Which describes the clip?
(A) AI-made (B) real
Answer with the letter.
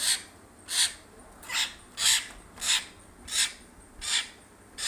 B